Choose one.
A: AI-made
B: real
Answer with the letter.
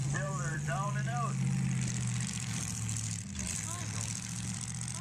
A